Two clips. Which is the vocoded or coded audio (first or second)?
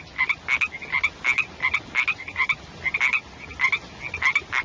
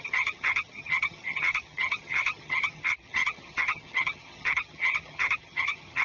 second